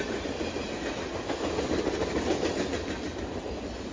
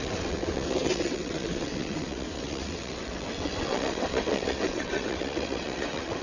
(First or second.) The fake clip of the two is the second